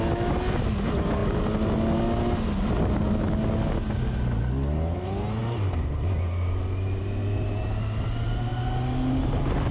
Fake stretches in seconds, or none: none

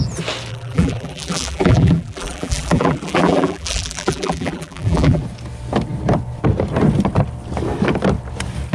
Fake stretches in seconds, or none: 0.5-5.2 (vocoder, BigVGAN v2)